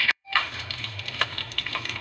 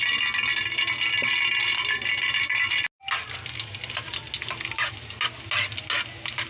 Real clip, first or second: second